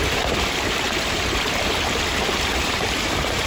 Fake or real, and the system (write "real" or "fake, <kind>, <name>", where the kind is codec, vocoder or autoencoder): fake, vocoder, BigVGAN v2